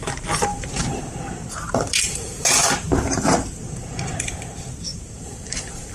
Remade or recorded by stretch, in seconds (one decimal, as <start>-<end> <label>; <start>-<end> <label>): 0.0-0.5 recorded; 0.5-4.0 remade; 4.0-4.9 recorded; 4.9-5.9 remade